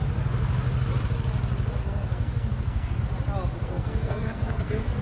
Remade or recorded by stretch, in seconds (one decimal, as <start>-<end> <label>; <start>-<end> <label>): 0.0-1.8 recorded; 1.8-3.0 remade; 3.0-3.6 recorded; 3.6-5.0 remade